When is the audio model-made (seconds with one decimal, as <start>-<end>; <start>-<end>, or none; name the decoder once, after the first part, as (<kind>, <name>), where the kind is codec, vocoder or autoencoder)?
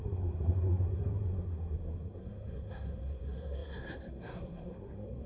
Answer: 0.0-5.3 (codec, SNAC)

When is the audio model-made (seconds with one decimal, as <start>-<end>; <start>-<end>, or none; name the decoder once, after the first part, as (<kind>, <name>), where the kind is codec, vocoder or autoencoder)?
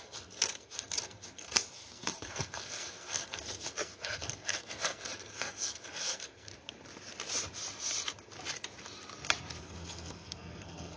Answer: 0.0-6.5 (codec, SNAC); 9.6-11.0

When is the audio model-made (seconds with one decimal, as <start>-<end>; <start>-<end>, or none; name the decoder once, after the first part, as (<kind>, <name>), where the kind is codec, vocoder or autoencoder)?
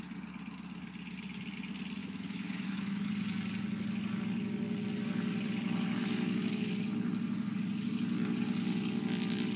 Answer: 2.0-3.1 (autoencoder, DAC-VAE); 6.0-6.7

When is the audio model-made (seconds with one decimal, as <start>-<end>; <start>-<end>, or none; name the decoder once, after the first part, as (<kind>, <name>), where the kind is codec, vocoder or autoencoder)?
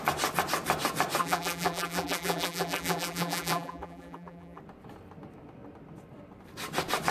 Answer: 1.2-4.6 (vocoder, BigVGAN v2)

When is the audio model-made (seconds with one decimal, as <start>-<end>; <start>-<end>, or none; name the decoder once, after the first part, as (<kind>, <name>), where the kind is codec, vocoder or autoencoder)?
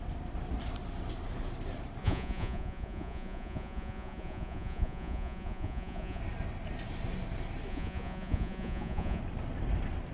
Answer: 2.0-6.2 (vocoder, Vocos); 7.7-9.2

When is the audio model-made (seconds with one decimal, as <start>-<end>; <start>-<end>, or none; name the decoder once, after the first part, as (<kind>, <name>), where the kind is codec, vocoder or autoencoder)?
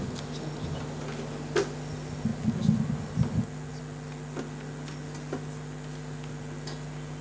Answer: none